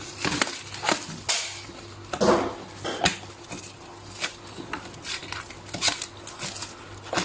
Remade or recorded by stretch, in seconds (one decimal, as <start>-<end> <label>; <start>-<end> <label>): 0.0-5.2 recorded; 5.2-5.8 remade; 5.8-7.2 recorded